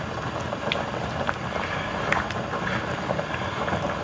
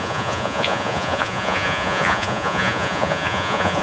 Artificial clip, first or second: second